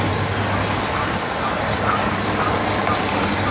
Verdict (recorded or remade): recorded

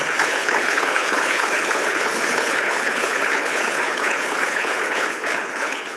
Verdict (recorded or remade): remade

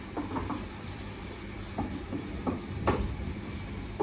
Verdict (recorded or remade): remade